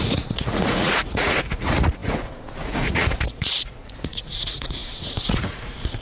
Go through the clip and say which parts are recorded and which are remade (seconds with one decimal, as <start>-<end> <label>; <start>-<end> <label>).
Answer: 0.0-6.0 remade